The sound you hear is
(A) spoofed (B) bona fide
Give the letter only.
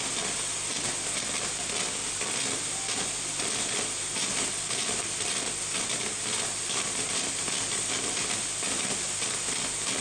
B